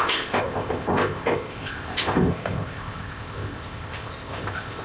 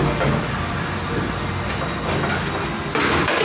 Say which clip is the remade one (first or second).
first